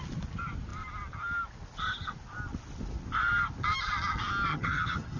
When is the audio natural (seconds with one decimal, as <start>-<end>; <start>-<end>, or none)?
0.0-4.5